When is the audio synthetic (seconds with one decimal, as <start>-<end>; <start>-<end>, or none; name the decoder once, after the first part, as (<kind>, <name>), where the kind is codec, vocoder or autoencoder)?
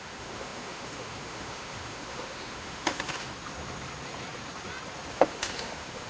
0.0-3.3 (autoencoder, DAC-VAE); 5.1-6.1